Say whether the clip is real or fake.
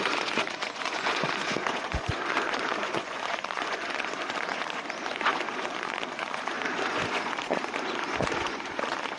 fake